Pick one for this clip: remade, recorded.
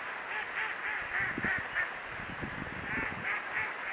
recorded